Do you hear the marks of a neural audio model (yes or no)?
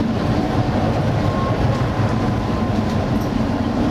no